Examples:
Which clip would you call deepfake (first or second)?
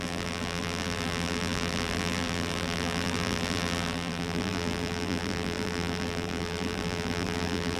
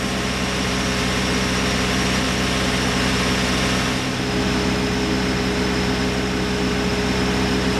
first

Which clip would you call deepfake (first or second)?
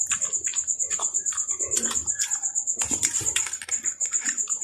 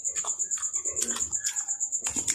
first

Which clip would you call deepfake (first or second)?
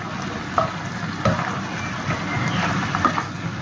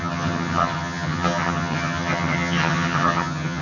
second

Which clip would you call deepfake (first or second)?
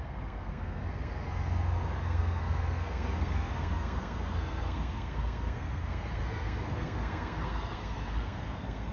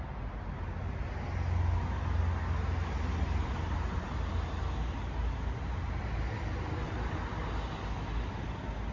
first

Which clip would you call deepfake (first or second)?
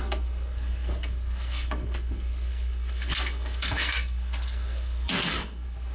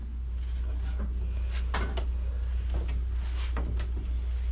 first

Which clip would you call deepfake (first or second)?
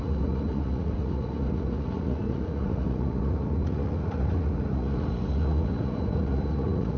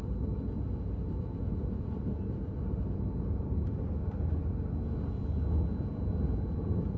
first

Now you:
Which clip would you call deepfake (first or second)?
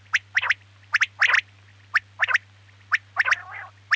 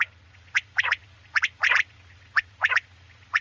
second